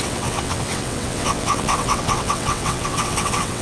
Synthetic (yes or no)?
yes